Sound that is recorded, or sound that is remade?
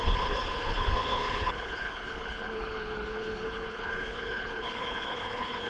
remade